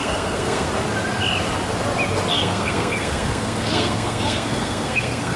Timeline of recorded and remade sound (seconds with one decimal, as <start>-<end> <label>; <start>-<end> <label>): 0.0-0.7 remade; 0.7-2.3 recorded; 2.3-5.4 remade

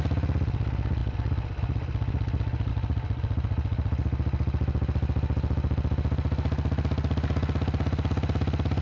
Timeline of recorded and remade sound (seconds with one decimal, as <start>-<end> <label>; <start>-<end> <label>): 0.0-8.8 recorded